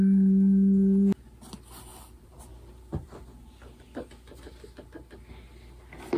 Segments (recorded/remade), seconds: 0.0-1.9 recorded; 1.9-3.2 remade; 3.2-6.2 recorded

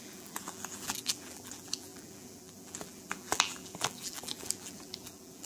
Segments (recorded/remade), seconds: 0.0-5.5 remade

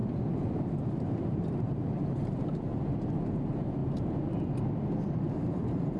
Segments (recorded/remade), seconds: 0.0-0.9 recorded; 0.9-2.7 remade; 2.7-3.3 recorded; 3.3-3.8 remade; 3.8-5.3 recorded; 5.3-6.0 remade

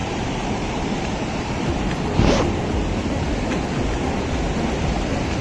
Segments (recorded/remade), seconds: 0.0-2.0 remade; 2.0-5.4 recorded